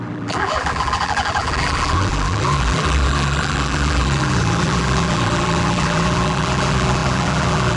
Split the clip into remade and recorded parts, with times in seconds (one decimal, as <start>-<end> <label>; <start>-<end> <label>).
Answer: 0.0-7.8 remade